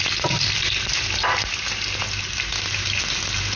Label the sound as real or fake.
real